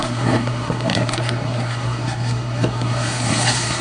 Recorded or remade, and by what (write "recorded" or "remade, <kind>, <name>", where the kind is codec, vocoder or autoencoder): remade, codec, SNAC